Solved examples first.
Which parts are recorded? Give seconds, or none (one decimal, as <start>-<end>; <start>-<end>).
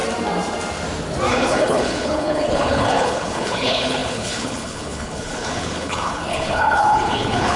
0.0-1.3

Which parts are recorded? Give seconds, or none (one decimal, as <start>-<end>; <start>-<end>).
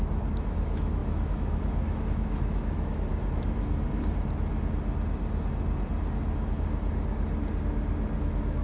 3.1-8.2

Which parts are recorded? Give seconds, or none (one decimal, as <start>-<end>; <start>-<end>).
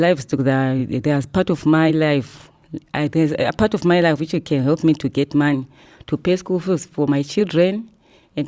0.0-0.8; 1.9-8.5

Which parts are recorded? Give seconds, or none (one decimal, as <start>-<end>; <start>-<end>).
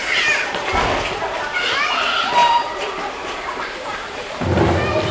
0.7-2.4; 4.3-5.1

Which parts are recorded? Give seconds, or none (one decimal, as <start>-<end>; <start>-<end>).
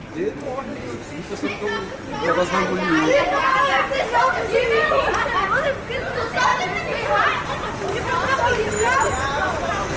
0.0-10.0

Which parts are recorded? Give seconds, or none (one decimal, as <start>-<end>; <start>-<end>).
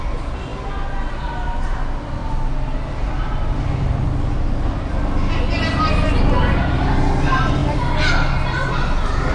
0.0-9.3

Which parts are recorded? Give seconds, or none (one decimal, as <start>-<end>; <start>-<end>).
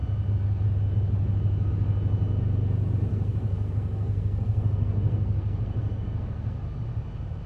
0.0-3.1; 6.6-7.5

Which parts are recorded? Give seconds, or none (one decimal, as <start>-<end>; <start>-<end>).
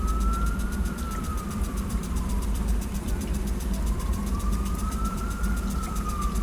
0.0-1.3; 5.1-6.4